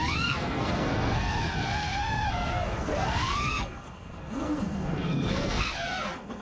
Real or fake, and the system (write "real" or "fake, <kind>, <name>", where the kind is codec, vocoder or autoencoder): fake, codec, SNAC